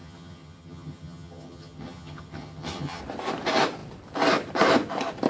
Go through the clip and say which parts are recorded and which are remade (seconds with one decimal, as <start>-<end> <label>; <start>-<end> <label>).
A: 0.0-3.0 remade; 3.0-5.3 recorded